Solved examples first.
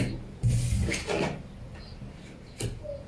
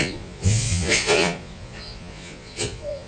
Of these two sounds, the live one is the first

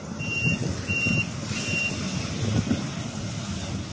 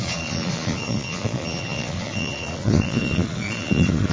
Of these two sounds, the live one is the first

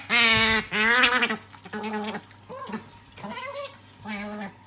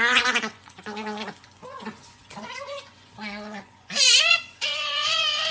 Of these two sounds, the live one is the first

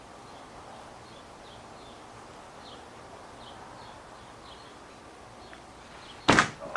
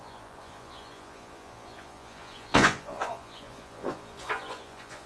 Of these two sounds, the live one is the first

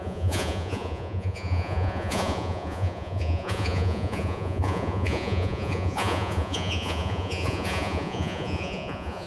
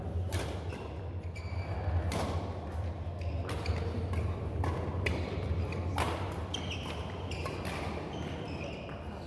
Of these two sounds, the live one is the second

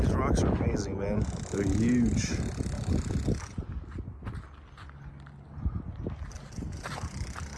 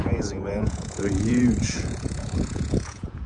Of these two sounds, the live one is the first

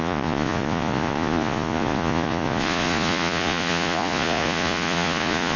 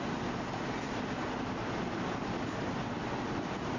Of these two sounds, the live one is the second